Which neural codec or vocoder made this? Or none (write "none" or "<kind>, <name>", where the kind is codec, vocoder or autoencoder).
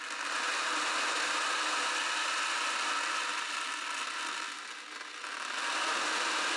none